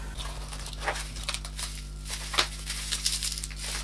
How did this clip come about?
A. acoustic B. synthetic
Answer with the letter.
A